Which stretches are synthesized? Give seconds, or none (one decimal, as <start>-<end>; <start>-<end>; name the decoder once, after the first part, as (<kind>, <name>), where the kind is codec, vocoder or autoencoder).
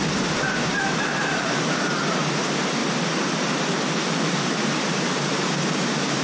0.0-2.8 (vocoder, BigVGAN v2); 4.2-6.2